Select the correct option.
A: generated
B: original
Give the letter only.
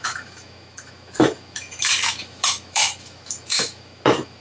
A